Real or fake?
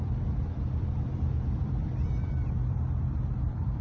fake